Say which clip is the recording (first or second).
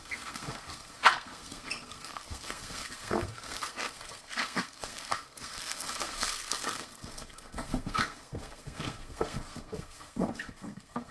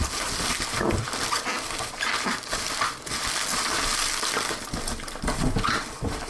second